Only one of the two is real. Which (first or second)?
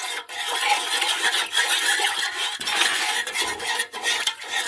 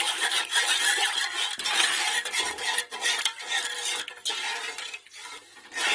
second